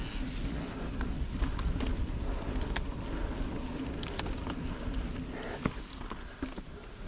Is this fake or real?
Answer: real